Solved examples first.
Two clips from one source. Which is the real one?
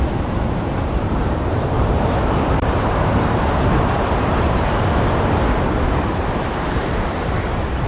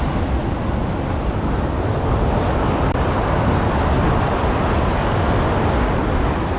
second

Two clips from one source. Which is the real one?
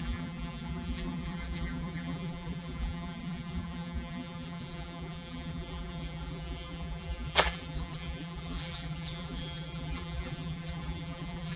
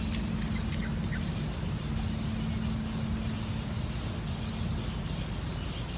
second